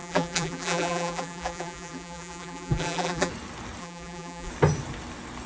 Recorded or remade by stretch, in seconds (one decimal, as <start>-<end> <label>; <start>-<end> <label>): 0.0-3.3 remade; 3.3-3.8 recorded; 3.8-4.5 remade; 4.5-5.5 recorded